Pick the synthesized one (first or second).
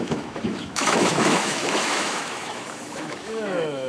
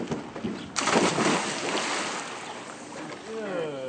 first